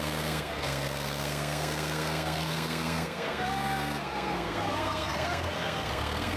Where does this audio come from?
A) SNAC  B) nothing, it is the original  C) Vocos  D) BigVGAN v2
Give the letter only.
A